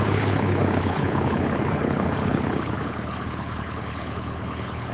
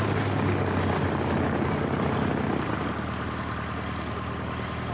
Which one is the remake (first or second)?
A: first